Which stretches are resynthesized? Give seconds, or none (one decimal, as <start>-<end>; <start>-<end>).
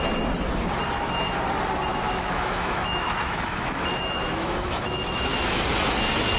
1.9-5.5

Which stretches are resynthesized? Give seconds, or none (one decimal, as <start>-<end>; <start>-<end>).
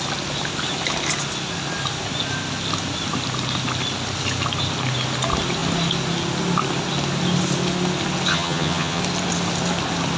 8.3-9.0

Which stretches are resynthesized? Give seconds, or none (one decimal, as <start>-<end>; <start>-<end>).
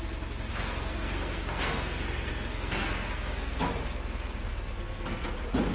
0.5-3.6; 4.5-5.3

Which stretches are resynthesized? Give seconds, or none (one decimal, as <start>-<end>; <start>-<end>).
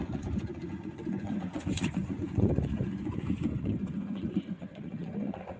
0.0-5.6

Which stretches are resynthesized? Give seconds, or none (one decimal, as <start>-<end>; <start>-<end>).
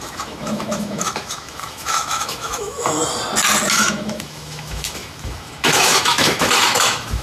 0.0-3.0; 3.7-7.2